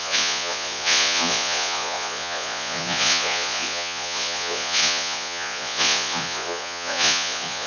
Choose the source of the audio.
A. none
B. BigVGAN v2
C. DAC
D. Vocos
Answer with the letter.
D